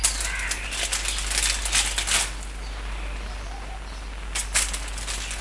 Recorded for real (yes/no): yes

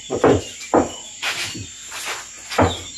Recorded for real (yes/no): yes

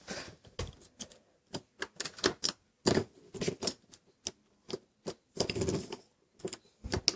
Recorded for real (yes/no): yes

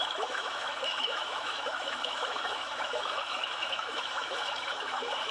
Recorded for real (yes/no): no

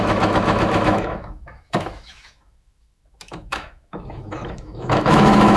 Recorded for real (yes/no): no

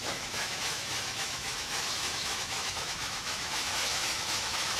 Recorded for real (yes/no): no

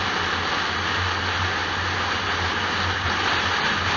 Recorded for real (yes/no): yes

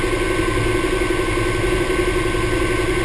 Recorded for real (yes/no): yes